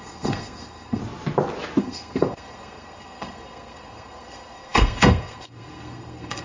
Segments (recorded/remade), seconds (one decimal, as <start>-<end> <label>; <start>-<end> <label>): 0.0-1.0 remade; 1.0-1.8 recorded; 1.8-6.4 remade

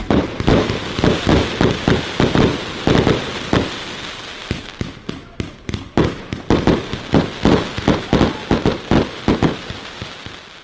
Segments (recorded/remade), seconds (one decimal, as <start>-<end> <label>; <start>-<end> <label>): 0.0-10.6 recorded

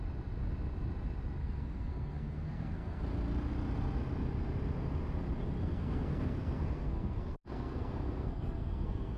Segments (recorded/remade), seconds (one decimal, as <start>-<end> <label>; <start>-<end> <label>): 0.0-1.4 recorded; 1.4-3.0 remade; 3.0-5.6 recorded; 5.6-9.2 remade

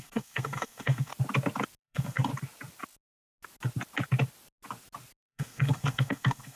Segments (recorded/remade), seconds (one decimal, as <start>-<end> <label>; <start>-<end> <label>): 0.0-1.1 remade; 1.1-1.8 recorded; 1.8-2.3 remade; 2.3-5.2 recorded; 5.2-6.6 remade